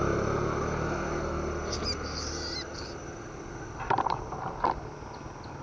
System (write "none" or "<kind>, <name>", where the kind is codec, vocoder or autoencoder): none